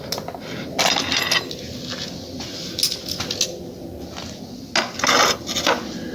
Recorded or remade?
recorded